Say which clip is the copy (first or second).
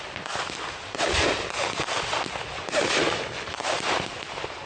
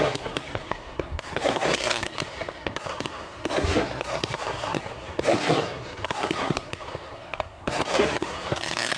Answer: second